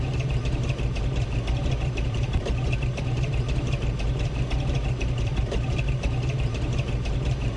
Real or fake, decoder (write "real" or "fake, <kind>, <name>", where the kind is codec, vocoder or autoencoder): fake, vocoder, BigVGAN v2